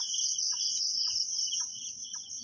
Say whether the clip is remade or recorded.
recorded